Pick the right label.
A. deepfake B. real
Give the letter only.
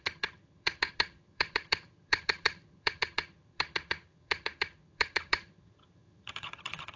A